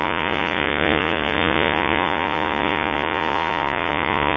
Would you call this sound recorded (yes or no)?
no